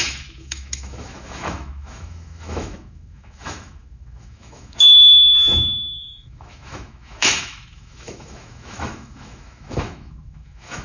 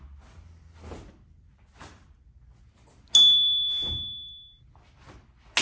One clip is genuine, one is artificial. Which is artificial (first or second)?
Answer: first